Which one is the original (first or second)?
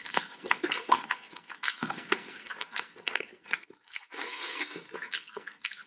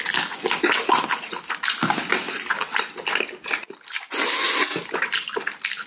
second